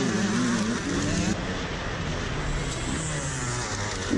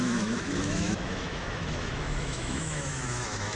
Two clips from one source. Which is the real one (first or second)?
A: first